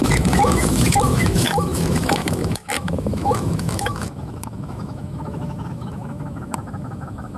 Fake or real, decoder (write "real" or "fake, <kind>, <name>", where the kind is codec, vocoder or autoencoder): fake, autoencoder, DAC-VAE